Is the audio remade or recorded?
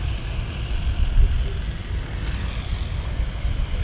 recorded